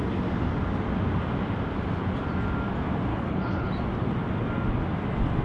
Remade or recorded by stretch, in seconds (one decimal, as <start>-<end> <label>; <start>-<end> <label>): 0.0-3.1 recorded; 3.1-3.7 remade; 3.7-5.4 recorded